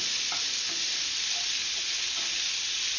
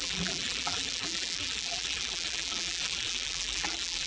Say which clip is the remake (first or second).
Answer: second